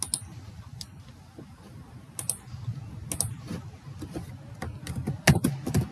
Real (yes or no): yes